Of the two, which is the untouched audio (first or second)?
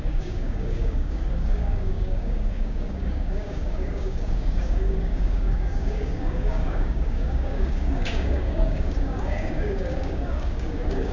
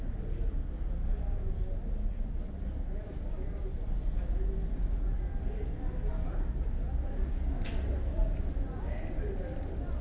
second